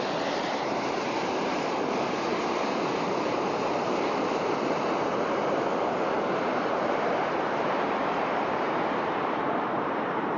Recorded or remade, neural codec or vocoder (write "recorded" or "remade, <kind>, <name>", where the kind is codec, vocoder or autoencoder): remade, vocoder, BigVGAN v2